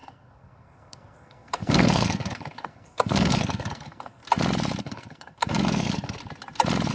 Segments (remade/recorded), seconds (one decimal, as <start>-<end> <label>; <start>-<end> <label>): 0.0-4.2 remade; 4.2-4.8 recorded; 4.8-6.2 remade; 6.2-6.9 recorded